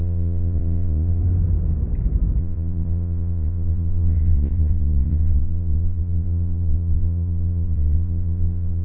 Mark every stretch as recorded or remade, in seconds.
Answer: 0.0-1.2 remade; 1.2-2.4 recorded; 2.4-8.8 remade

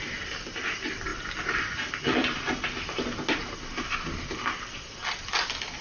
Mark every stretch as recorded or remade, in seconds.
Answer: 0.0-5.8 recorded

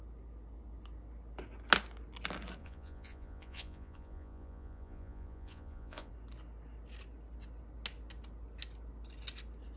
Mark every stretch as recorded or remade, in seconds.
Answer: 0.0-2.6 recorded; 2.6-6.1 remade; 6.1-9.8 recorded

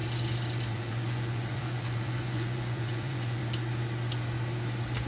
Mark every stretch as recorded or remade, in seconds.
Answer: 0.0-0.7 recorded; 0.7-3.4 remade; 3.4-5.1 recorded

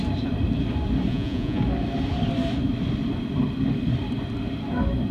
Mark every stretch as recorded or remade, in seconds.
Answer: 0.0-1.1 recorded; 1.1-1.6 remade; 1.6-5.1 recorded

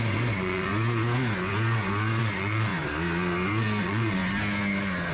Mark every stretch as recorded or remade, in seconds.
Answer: 0.0-0.7 remade; 0.7-2.2 recorded; 2.2-2.7 remade; 2.7-3.8 recorded; 3.8-4.2 remade; 4.2-5.1 recorded

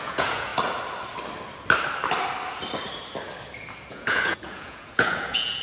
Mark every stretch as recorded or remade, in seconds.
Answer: 0.0-0.5 remade; 0.5-3.9 recorded; 3.9-5.6 remade

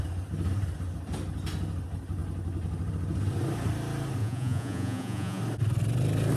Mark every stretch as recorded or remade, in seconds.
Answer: 0.0-4.2 recorded; 4.2-5.4 remade; 5.4-6.4 recorded